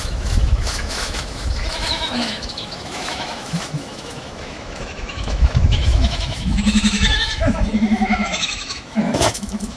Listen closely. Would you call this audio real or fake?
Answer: fake